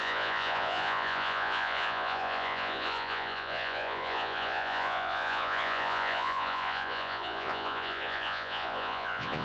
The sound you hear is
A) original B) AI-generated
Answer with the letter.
B